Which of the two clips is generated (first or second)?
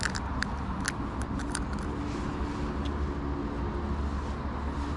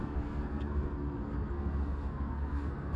second